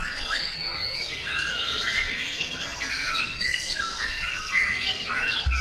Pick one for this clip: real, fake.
fake